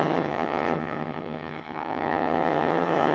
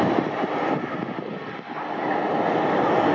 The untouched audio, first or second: second